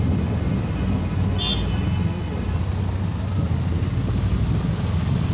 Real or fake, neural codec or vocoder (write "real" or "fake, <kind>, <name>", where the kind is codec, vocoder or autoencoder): real